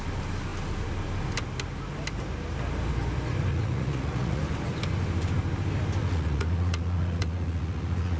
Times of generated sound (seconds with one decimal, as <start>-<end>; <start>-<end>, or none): 3.5-4.4; 6.0-8.2